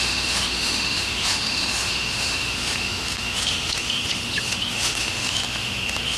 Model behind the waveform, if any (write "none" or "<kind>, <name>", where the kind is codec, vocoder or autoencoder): autoencoder, DAC-VAE